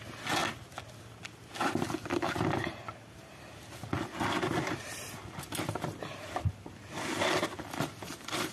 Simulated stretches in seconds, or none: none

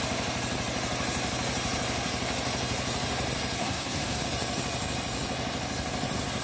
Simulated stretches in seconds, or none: 3.6-4.2 (codec, SNAC)

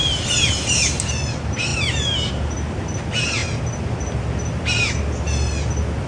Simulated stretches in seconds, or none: none

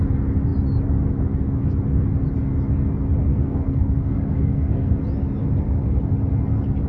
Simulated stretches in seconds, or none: 3.3-5.0 (codec, SNAC); 5.4-5.9

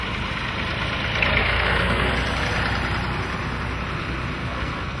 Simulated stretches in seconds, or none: 1.4-2.1 (codec, SNAC); 4.4-5.0

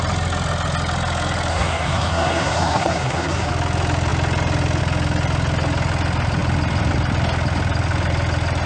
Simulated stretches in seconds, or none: 1.5-3.5 (codec, SNAC)

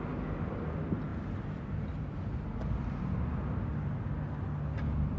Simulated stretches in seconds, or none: none

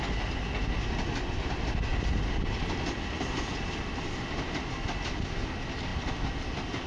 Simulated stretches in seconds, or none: none